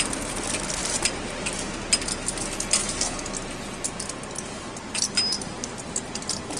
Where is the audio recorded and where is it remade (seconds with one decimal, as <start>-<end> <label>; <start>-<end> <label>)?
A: 0.0-0.8 recorded; 0.8-1.7 remade; 1.7-6.6 recorded